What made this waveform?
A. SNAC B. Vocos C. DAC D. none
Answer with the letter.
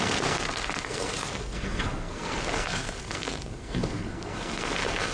A